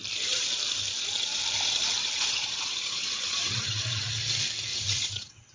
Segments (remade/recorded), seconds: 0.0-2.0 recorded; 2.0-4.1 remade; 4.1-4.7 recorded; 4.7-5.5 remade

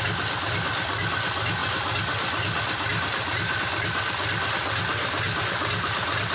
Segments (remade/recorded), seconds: 0.0-6.3 recorded

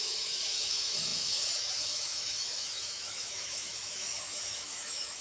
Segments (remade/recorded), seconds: 0.0-5.2 remade

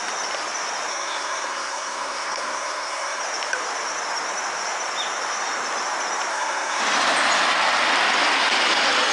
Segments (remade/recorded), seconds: 0.0-0.9 recorded; 0.9-3.2 remade; 3.2-6.3 recorded; 6.3-6.8 remade; 6.8-9.1 recorded

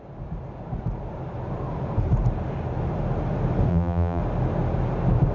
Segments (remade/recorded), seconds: 0.0-3.7 recorded; 3.7-4.2 remade; 4.2-5.3 recorded